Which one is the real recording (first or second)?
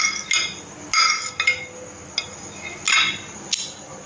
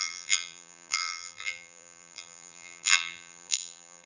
first